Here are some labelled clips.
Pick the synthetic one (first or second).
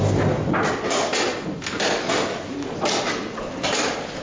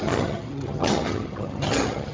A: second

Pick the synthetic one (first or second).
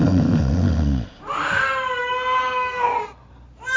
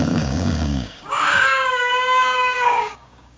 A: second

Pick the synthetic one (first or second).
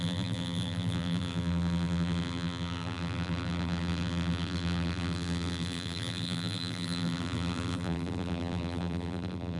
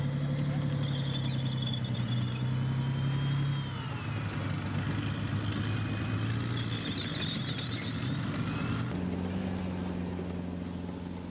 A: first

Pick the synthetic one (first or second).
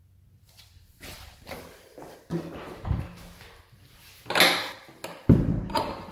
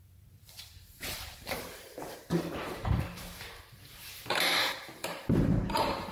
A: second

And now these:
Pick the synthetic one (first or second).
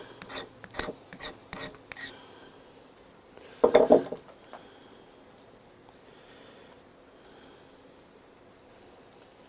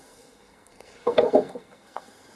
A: second